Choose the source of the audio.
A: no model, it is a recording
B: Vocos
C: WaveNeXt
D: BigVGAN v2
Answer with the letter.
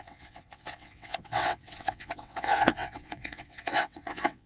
C